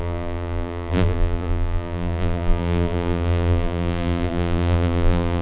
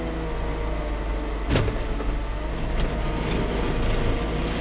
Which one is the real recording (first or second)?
second